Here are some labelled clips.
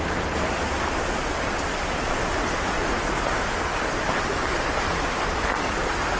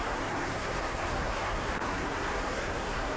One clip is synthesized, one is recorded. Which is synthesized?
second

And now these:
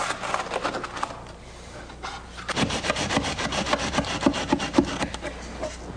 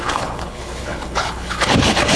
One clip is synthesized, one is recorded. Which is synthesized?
second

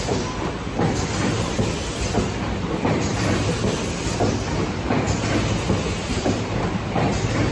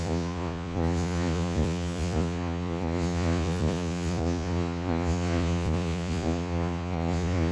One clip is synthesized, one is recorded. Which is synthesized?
second